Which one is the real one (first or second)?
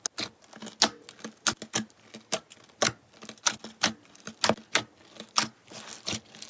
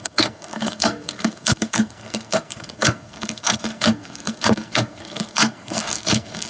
first